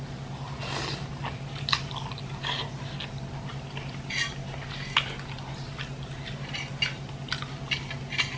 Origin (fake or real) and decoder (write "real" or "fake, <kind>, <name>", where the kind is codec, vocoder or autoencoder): real